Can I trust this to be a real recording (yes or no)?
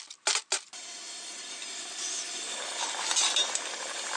yes